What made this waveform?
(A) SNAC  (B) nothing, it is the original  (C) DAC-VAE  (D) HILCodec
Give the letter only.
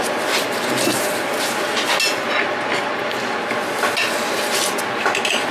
B